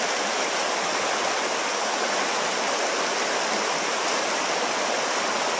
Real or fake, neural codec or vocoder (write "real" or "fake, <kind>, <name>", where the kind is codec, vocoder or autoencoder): real